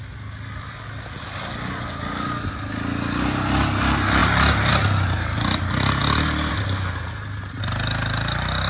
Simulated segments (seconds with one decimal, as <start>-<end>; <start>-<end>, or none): none